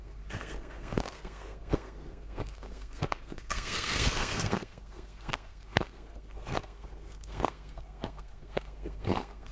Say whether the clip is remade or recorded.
remade